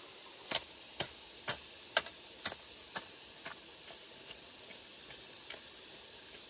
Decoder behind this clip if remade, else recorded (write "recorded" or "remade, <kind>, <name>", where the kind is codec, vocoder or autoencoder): recorded